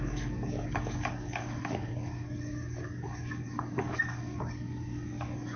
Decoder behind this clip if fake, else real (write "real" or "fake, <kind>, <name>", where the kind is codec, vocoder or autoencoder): fake, codec, DAC